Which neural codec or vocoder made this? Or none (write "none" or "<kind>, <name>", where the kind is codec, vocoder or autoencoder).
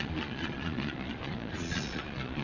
vocoder, Vocos